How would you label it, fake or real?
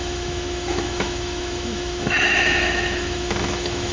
fake